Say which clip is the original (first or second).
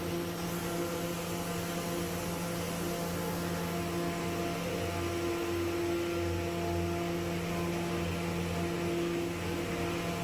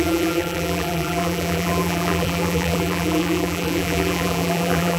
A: first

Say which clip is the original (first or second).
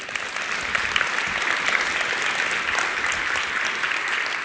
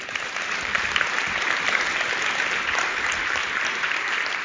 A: first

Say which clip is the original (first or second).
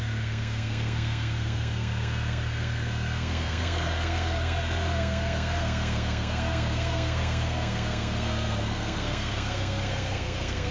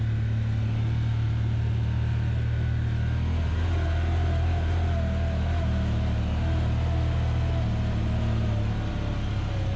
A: second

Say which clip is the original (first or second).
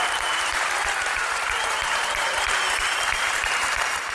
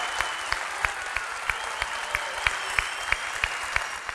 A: second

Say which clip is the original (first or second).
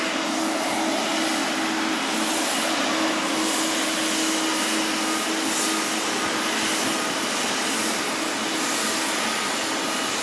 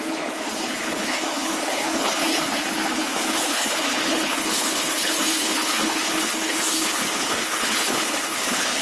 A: first